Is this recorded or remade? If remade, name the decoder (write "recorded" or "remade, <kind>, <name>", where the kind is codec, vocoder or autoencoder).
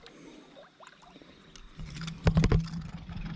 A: recorded